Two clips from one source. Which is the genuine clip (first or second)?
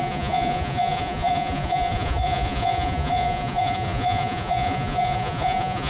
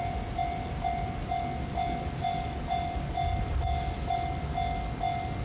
second